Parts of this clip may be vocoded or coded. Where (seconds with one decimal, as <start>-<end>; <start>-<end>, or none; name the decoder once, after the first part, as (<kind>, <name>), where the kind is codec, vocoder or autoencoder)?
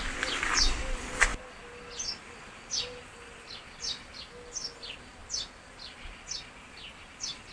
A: none